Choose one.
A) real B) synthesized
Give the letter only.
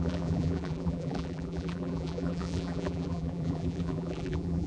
B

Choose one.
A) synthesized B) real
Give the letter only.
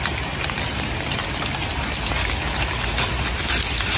B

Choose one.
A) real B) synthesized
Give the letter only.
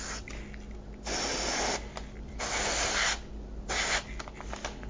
A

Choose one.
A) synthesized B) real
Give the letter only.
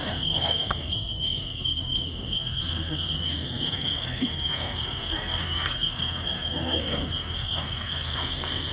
A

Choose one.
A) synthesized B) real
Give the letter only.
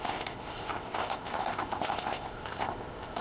A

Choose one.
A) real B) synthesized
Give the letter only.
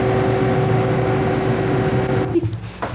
A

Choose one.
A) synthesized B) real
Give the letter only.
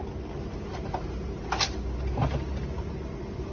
B